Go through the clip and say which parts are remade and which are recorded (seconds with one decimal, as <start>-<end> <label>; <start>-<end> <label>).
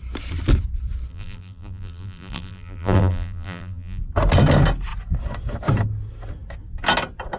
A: 0.0-1.1 recorded; 1.1-4.0 remade; 4.0-7.4 recorded